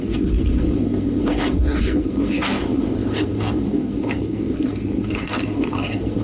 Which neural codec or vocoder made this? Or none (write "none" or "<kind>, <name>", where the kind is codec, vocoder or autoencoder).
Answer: codec, SNAC